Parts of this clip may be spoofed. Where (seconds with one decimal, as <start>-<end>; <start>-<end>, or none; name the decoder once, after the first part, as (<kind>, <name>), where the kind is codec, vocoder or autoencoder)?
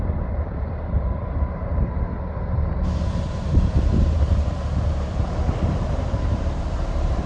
0.0-7.3 (vocoder, BigVGAN v2)